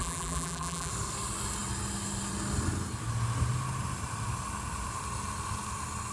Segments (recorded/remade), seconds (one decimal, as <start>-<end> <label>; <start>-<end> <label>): 0.0-0.9 remade; 0.9-6.1 recorded